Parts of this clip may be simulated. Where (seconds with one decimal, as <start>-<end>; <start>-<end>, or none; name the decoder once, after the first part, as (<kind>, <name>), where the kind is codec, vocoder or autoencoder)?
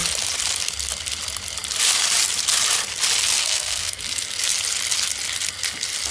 3.4-4.0 (codec, SNAC)